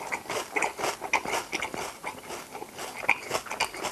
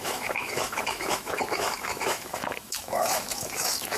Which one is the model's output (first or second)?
second